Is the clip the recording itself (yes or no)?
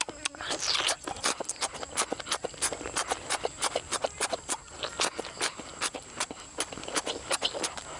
yes